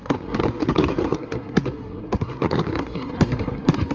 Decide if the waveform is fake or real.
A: fake